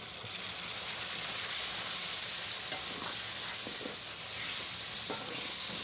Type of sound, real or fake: real